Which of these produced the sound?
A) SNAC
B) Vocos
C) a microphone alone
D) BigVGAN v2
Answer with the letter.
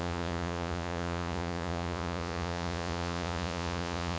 B